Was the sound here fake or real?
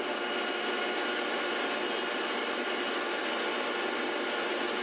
real